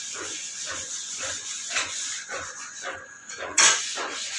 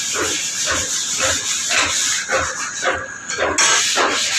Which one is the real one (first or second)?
second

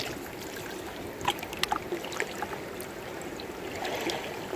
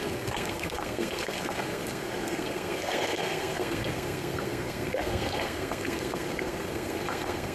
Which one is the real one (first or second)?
first